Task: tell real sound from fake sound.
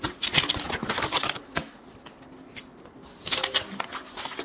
real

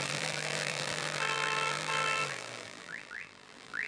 fake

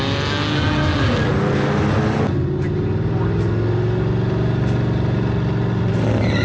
real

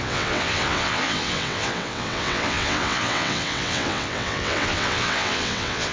fake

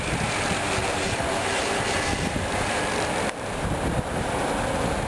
fake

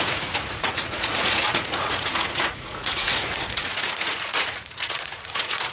fake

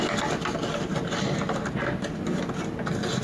real